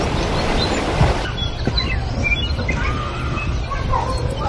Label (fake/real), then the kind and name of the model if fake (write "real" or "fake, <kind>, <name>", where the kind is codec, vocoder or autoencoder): real